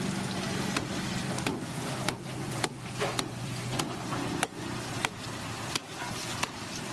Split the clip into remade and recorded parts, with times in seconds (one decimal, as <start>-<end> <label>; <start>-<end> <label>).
0.0-1.5 recorded; 1.5-5.2 remade; 5.2-5.8 recorded; 5.8-6.4 remade; 6.4-6.9 recorded